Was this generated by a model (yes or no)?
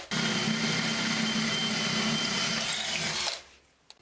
no